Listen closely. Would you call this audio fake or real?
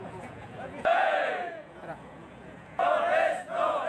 fake